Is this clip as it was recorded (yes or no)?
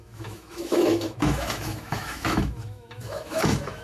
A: no